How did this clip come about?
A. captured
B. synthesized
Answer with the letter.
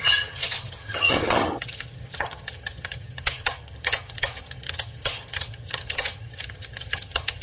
B